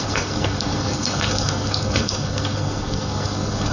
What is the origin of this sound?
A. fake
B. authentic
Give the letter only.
A